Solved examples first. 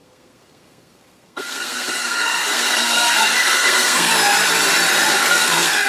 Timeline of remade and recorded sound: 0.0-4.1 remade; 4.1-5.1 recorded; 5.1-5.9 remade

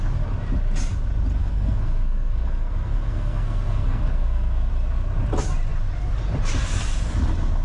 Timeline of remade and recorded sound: 0.0-1.4 recorded; 1.4-4.7 remade; 4.7-7.6 recorded

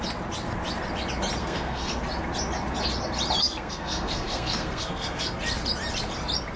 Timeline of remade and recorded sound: 0.0-1.4 recorded; 1.4-2.0 remade; 2.0-3.4 recorded; 3.4-5.4 remade; 5.4-6.6 recorded

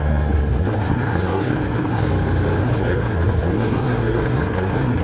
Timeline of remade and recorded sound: 0.0-2.1 remade; 2.1-2.6 recorded; 2.6-5.0 remade

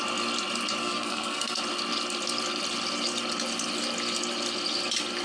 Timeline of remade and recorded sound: 0.0-0.8 recorded; 0.8-1.6 remade; 1.6-5.2 recorded

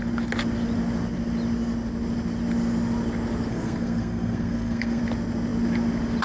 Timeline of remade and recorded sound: 0.0-3.5 recorded; 3.5-5.0 remade; 5.0-6.2 recorded